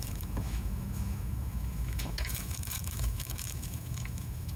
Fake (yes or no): yes